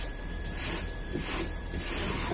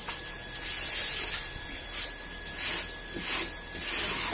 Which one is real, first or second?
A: second